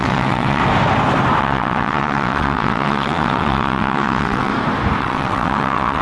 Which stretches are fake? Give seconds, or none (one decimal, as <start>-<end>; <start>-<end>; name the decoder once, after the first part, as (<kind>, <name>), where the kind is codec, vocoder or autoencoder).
0.0-0.6 (vocoder, WaveNeXt); 1.4-4.5; 5.0-6.0